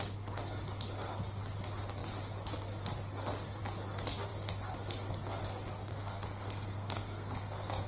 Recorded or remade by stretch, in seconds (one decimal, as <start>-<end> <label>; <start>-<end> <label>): 0.0-5.9 recorded; 5.9-7.9 remade